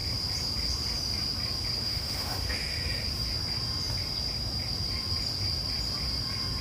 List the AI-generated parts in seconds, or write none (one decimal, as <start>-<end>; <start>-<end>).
1.8-2.7